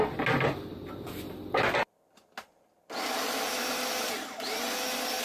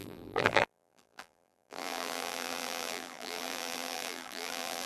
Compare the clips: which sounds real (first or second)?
first